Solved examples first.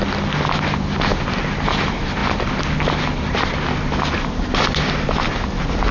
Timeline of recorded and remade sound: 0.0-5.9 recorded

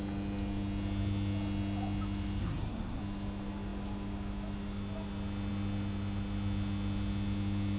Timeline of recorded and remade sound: 0.0-2.4 recorded; 2.4-3.0 remade; 3.0-7.8 recorded

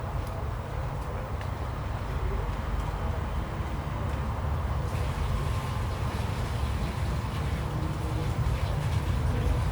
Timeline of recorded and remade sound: 0.0-0.8 recorded; 0.8-2.2 remade; 2.2-8.2 recorded; 8.2-9.0 remade; 9.0-9.7 recorded

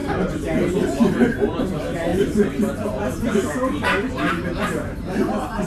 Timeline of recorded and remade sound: 0.0-5.7 remade

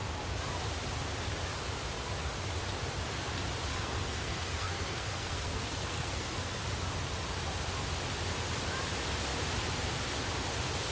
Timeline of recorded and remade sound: 0.0-3.7 recorded; 3.7-6.6 remade; 6.6-10.9 recorded

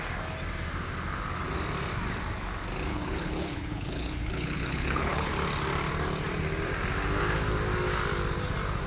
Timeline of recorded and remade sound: 0.0-2.9 recorded; 2.9-5.3 remade; 5.3-8.9 recorded